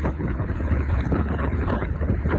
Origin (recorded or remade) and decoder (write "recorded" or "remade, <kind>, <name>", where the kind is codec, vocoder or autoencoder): remade, codec, HILCodec